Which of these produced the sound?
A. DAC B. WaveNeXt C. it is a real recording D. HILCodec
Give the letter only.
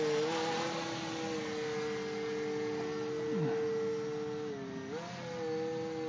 C